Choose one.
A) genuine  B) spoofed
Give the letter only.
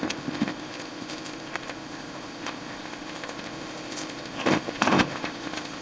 B